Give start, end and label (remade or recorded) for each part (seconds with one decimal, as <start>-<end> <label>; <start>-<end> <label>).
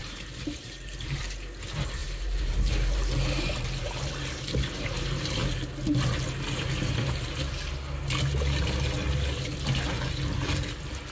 0.0-1.2 remade; 1.2-2.0 recorded; 2.0-4.1 remade; 4.1-11.1 recorded